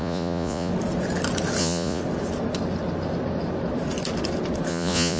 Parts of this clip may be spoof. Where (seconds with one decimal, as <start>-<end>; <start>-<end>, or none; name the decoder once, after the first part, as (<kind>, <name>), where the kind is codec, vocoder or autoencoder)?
0.0-0.7 (vocoder, Vocos); 1.6-2.0; 4.7-5.2